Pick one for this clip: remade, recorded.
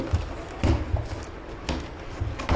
recorded